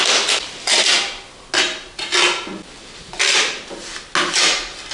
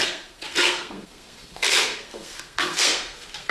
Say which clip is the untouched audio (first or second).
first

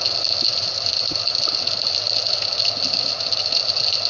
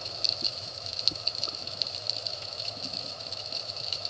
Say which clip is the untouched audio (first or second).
first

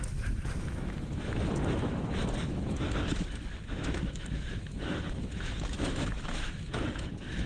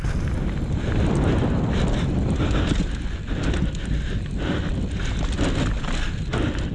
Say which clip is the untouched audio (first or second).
second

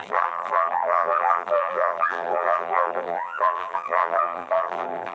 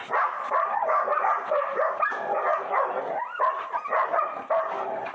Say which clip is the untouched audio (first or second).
second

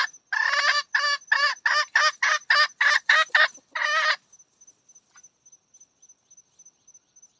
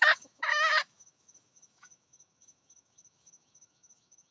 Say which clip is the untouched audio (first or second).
first